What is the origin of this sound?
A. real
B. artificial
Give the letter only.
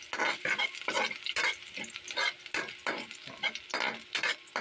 A